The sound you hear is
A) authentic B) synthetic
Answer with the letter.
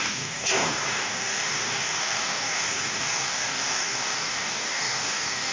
B